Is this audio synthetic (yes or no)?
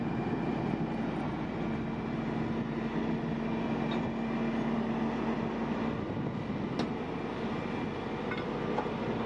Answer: no